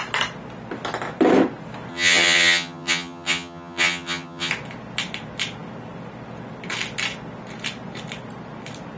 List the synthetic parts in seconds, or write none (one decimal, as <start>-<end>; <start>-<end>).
1.9-4.5